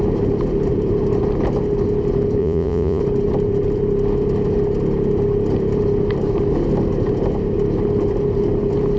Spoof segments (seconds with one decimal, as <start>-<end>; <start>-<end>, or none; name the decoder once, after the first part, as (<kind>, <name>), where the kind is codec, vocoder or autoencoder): 2.4-3.0 (vocoder, Vocos)